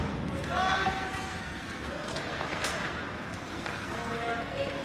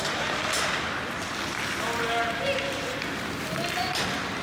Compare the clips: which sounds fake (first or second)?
first